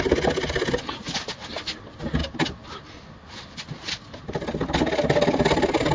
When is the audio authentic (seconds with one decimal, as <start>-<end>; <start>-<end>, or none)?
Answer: 0.0-5.9